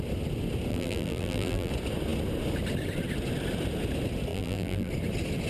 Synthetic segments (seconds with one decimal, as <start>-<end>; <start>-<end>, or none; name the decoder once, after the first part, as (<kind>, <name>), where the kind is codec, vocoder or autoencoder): 0.7-1.7 (vocoder, BigVGAN v2); 4.3-4.9